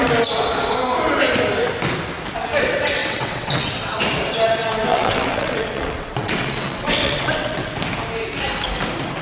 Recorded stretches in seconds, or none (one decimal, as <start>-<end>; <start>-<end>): 0.0-3.0; 4.0-4.9; 7.8-9.2